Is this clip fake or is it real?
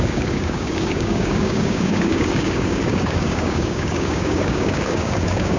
fake